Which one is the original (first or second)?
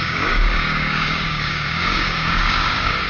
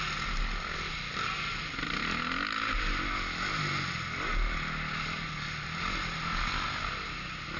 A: second